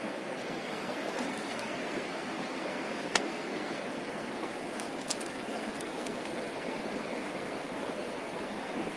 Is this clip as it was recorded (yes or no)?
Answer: no